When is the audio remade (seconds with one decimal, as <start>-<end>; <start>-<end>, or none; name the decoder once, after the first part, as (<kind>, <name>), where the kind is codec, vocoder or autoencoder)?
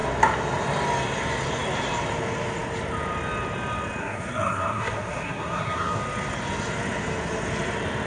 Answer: 4.0-6.0 (codec, SNAC)